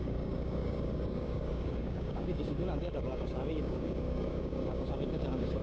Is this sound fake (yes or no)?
yes